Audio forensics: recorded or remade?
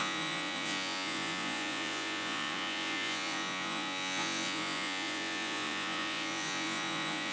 remade